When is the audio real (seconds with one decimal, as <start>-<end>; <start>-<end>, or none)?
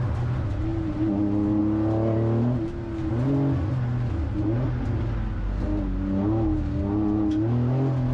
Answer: 0.0-8.1